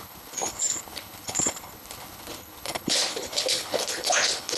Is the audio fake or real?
fake